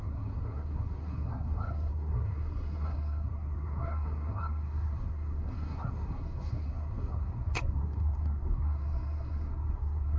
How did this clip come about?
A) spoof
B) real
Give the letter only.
A